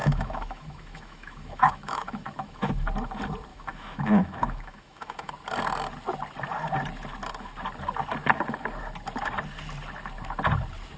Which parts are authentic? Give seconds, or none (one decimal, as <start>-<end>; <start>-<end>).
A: 2.7-3.5; 5.3-11.0